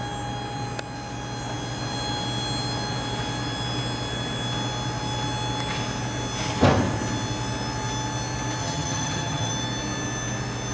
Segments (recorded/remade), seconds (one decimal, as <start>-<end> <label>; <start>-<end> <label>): 0.0-8.6 recorded; 8.6-9.5 remade; 9.5-10.7 recorded